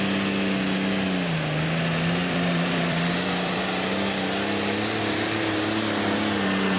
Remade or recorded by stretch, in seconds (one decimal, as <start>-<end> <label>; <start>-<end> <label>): 0.0-2.2 recorded; 2.2-3.6 remade; 3.6-6.8 recorded